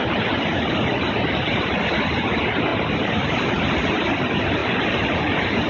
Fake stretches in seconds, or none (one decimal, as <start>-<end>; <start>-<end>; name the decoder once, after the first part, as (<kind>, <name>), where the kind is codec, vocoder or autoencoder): 0.0-0.7 (vocoder, BigVGAN v2); 2.7-3.5; 4.6-5.7